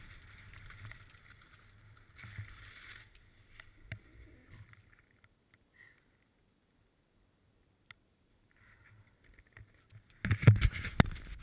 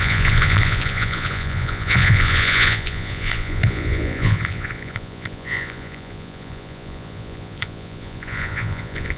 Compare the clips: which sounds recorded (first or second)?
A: first